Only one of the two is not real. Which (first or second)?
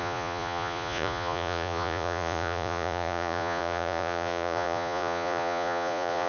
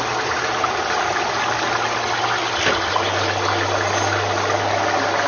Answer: first